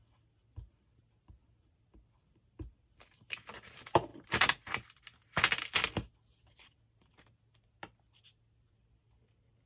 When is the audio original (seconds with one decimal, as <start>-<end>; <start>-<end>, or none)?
0.0-9.7